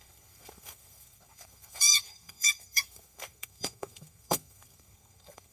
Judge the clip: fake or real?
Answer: fake